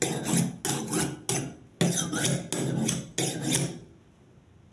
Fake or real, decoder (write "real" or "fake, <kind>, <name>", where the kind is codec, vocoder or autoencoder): real